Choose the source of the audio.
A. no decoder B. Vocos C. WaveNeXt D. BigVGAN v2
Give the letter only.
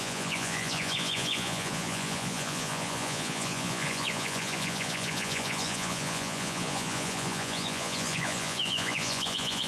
B